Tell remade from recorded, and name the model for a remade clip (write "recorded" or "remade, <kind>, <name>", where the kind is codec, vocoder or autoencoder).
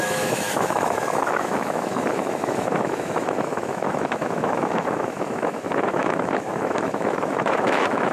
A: remade, autoencoder, DAC-VAE